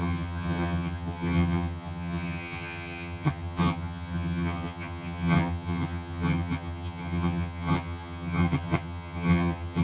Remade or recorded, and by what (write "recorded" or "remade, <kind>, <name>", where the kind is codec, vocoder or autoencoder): remade, vocoder, HiFi-GAN